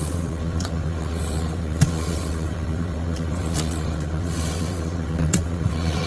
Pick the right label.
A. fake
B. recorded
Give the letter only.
A